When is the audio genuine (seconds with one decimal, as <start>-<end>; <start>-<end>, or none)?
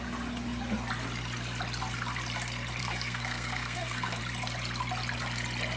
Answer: 0.0-2.8; 4.2-5.8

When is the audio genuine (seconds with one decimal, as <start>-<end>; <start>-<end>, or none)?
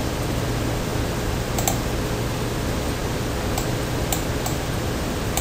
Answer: 0.0-5.4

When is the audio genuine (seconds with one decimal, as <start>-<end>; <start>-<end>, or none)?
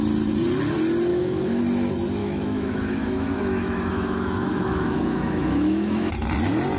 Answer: 0.0-1.1; 1.6-2.2; 6.1-6.8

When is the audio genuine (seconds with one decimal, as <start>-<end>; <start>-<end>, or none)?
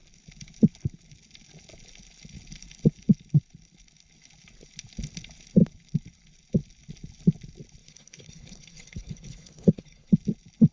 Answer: 0.0-7.8; 10.1-10.7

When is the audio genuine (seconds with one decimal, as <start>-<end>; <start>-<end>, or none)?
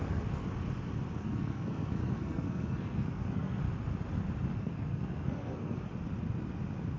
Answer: 0.4-1.2; 3.6-4.6; 5.9-7.0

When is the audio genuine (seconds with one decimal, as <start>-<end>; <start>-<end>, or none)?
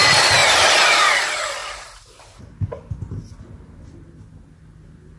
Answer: 0.0-0.4; 1.1-5.2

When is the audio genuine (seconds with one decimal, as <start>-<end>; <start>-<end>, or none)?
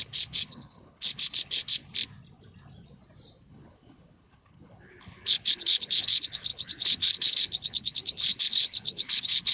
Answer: 1.8-3.5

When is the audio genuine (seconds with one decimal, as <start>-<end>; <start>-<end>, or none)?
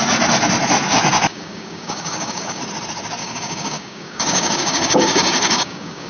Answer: 0.0-1.3; 2.6-3.2